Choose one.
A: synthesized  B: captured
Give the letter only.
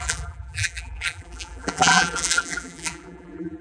A